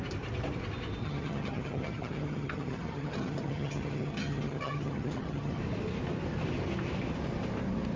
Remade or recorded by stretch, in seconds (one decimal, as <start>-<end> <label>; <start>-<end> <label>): 0.0-1.0 recorded; 1.0-5.6 remade; 5.6-8.0 recorded